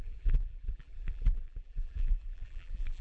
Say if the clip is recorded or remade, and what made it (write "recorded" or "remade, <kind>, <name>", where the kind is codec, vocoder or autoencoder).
remade, vocoder, BigVGAN v2